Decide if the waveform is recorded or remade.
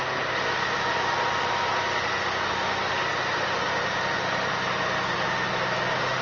recorded